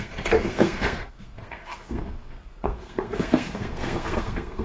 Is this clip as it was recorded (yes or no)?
no